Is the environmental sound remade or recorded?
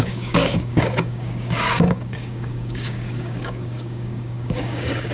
remade